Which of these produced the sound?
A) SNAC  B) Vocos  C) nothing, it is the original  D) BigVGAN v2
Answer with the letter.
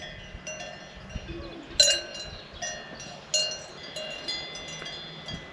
C